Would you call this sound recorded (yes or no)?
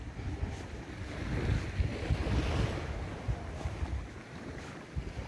yes